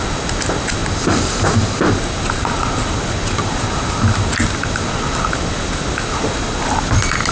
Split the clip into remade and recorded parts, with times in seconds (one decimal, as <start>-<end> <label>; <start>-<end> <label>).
0.0-7.3 recorded